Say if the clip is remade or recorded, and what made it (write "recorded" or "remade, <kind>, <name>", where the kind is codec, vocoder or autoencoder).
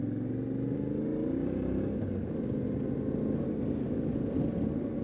recorded